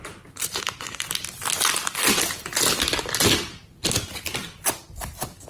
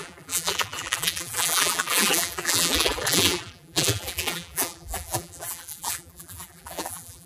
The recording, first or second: first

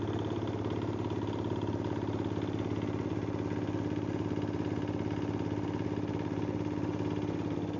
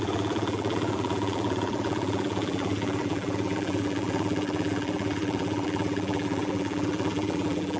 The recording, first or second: first